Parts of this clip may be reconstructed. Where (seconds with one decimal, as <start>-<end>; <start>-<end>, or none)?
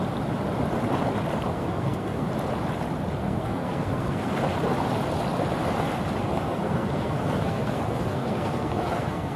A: 1.5-2.3; 3.2-4.4; 6.2-9.4